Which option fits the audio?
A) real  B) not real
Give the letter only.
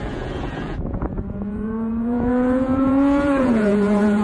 B